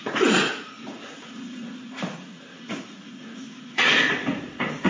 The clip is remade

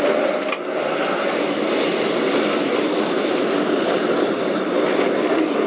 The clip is remade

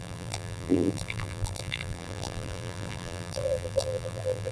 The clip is remade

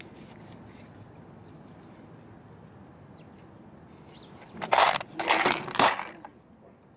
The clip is recorded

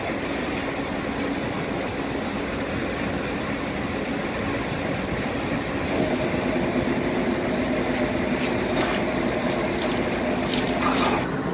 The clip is recorded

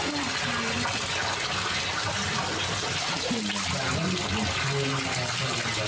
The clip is recorded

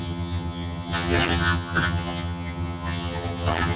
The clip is remade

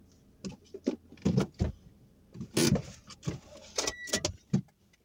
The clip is recorded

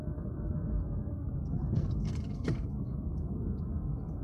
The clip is remade